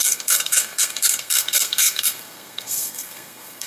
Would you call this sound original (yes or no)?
no